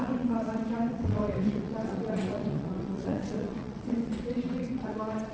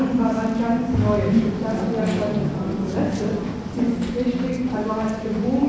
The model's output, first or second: first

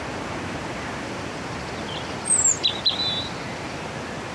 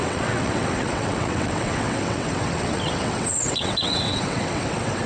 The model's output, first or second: second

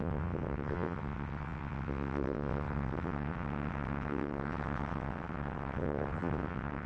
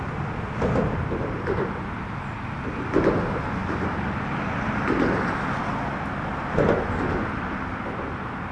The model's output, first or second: first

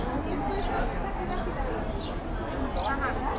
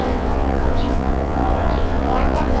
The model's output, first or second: second